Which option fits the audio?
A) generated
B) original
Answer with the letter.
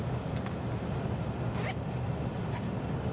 B